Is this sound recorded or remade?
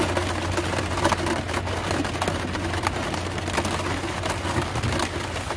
recorded